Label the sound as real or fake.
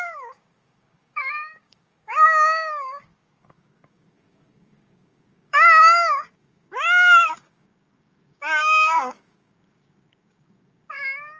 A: fake